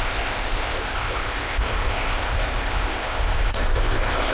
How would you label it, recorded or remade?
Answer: remade